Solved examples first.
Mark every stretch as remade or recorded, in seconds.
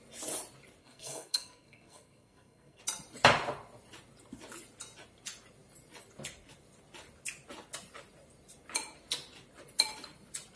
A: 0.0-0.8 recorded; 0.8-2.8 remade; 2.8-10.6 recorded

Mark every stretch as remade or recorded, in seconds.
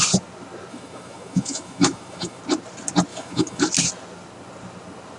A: 0.0-0.7 recorded; 0.7-2.4 remade; 2.4-3.1 recorded; 3.1-3.6 remade; 3.6-5.2 recorded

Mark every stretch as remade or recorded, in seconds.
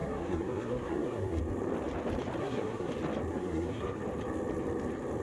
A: 0.0-1.4 remade; 1.4-2.4 recorded; 2.4-2.9 remade; 2.9-3.3 recorded; 3.3-4.0 remade; 4.0-5.2 recorded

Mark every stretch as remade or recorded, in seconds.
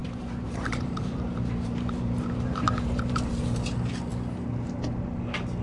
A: 0.0-3.4 remade; 3.4-5.6 recorded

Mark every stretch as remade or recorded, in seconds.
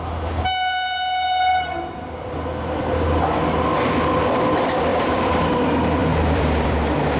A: 0.0-1.5 recorded; 1.5-2.3 remade; 2.3-4.9 recorded; 4.9-5.4 remade; 5.4-6.0 recorded; 6.0-7.2 remade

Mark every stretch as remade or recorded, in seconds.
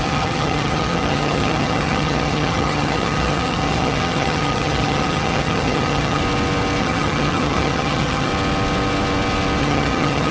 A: 0.0-6.2 remade; 6.2-6.8 recorded; 6.8-8.3 remade; 8.3-9.6 recorded; 9.6-10.3 remade